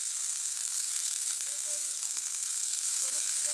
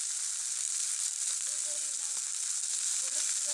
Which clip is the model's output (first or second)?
first